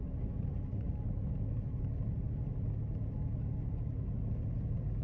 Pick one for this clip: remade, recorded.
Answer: recorded